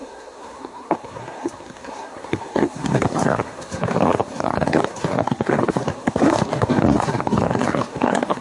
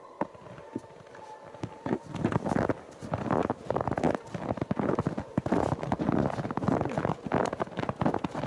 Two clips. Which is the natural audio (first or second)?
second